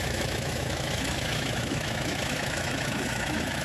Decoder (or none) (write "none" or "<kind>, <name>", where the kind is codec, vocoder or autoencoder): autoencoder, DAC-VAE